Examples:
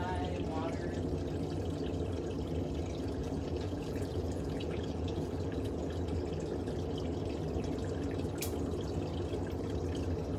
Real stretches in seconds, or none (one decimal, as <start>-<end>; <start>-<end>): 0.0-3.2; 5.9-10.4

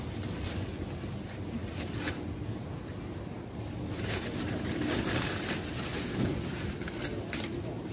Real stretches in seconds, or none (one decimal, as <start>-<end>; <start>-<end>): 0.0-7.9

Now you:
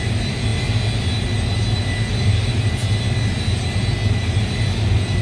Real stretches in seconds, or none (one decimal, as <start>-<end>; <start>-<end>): 0.0-5.2

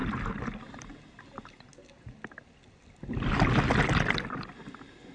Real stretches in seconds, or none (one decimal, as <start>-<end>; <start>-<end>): 0.0-5.1

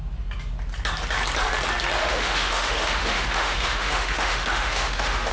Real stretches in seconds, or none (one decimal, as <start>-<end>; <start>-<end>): 0.0-2.0